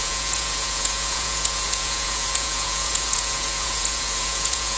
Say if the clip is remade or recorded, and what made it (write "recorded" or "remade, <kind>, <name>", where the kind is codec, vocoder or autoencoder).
remade, vocoder, Vocos